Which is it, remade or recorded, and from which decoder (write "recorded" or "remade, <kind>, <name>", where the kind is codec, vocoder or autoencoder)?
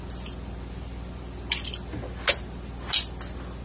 recorded